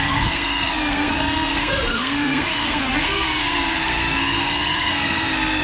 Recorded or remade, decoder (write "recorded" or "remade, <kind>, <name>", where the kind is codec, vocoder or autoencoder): remade, codec, SNAC